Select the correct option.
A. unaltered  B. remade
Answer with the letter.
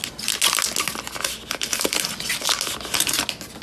A